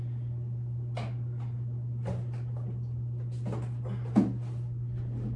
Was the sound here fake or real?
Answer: real